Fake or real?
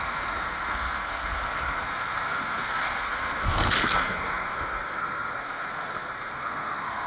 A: fake